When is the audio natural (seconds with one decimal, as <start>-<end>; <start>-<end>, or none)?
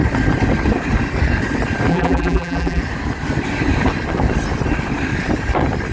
0.0-1.9; 2.8-5.9